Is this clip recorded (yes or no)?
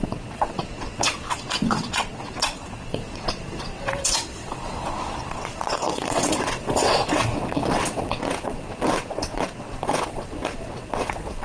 no